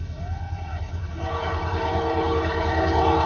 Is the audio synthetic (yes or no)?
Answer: yes